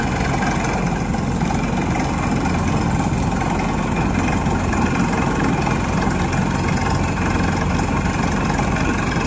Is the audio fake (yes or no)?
no